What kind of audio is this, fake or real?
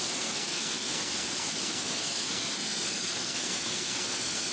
fake